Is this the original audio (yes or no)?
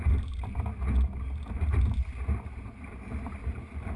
no